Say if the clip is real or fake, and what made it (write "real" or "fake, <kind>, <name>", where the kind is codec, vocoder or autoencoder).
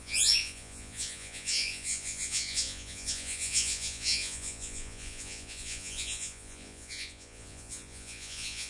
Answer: fake, vocoder, Vocos